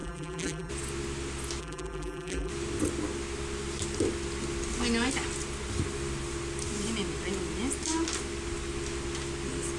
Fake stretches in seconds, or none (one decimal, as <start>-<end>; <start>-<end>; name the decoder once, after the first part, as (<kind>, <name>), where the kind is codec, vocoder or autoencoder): 0.0-0.7 (vocoder, BigVGAN v2); 1.6-2.5